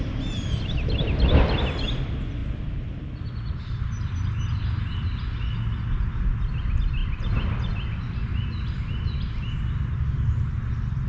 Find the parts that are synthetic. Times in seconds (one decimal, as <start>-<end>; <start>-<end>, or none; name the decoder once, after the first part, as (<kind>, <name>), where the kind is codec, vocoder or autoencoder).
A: 2.4-4.6 (vocoder, BigVGAN v2); 7.0-8.0